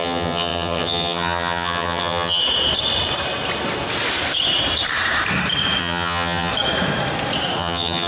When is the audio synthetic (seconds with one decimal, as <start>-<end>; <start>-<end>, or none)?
0.0-2.4; 5.8-6.5; 7.6-8.1